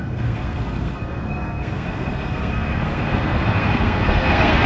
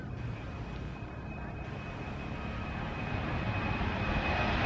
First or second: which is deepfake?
first